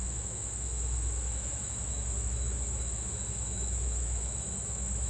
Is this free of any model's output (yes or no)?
no